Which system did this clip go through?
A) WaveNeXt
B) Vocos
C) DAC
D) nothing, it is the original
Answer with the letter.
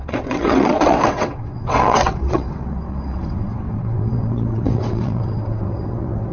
A